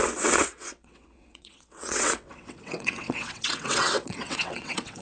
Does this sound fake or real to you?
fake